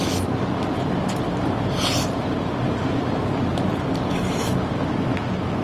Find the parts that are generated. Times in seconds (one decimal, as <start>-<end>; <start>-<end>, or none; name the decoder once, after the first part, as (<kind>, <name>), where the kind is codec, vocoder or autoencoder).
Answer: 1.3-3.5 (vocoder, BigVGAN v2)